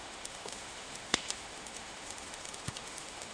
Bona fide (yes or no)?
no